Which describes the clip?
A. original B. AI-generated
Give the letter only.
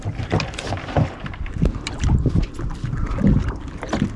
A